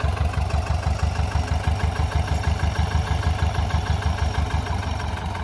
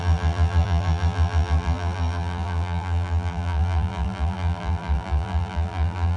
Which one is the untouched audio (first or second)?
first